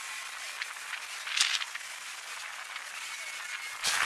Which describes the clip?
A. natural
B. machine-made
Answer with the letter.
A